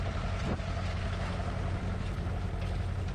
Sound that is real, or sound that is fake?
real